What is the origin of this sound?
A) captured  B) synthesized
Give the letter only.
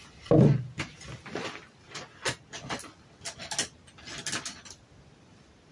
A